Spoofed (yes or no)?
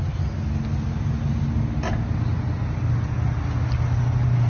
no